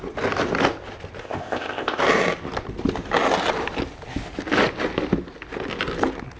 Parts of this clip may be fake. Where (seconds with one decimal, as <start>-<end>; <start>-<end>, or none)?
1.2-2.0